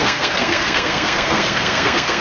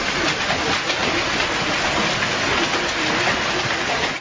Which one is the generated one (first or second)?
first